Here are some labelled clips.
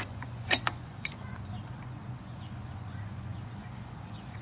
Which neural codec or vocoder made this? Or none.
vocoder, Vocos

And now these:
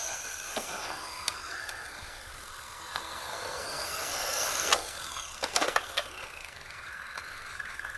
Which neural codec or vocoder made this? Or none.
codec, SNAC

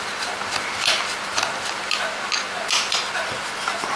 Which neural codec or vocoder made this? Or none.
none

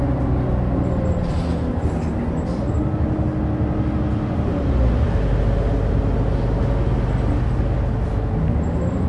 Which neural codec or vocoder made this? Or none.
none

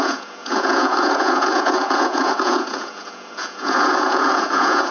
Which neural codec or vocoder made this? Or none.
vocoder, Vocos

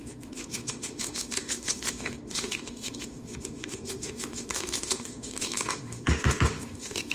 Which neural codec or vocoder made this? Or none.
autoencoder, DAC-VAE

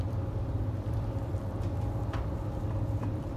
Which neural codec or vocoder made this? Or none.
vocoder, BigVGAN v2